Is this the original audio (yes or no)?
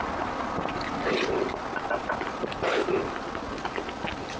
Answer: yes